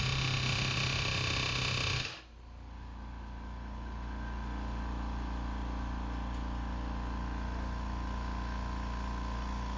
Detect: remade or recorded recorded